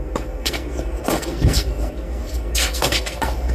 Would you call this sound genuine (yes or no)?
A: no